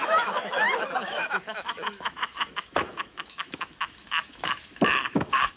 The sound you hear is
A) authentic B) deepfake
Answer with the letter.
B